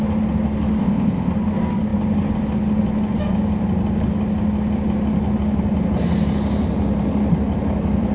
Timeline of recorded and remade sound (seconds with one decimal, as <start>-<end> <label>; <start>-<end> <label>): 0.0-0.8 recorded; 0.8-1.3 remade; 1.3-8.1 recorded